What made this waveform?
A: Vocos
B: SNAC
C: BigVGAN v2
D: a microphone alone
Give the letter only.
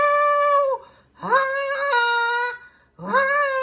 D